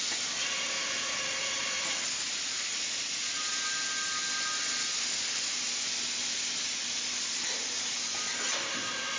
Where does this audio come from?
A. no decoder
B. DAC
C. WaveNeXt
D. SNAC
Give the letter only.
A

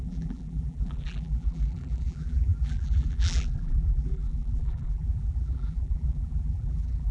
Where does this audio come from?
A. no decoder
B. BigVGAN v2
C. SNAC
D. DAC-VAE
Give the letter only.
B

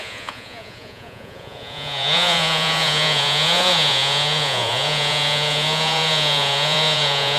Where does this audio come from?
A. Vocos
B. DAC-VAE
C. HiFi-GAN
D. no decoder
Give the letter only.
A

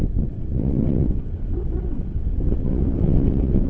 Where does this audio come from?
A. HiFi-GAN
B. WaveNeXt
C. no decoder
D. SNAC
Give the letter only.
B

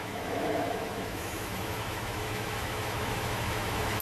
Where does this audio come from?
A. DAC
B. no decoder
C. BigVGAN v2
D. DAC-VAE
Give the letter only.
D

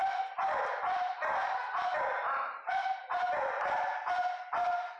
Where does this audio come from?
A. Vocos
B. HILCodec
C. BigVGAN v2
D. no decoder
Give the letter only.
D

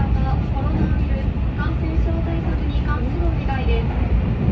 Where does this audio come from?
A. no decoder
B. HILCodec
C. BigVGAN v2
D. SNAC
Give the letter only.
A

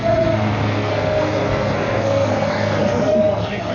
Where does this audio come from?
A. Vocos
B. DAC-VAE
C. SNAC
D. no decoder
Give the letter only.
C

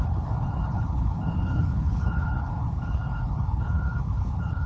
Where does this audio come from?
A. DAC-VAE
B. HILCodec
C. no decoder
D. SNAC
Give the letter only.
B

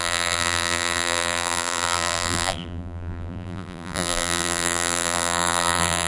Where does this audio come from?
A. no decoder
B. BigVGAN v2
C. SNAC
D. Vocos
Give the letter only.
B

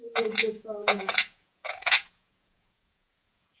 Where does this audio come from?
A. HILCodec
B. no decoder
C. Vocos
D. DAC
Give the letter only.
C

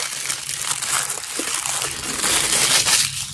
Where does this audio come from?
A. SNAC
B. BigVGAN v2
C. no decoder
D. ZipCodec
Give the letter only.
C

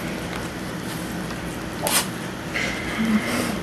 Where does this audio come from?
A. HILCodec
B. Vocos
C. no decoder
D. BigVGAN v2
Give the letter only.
C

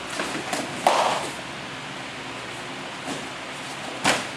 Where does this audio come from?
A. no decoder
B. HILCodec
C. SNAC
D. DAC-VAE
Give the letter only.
A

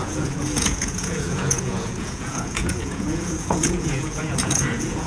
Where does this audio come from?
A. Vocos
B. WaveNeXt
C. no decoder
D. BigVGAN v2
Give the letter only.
A